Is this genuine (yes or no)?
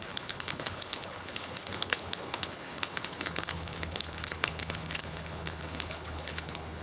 no